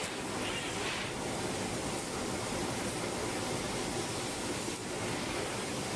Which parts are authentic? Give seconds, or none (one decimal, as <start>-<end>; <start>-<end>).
2.9-4.8